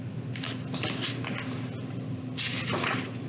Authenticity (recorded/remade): recorded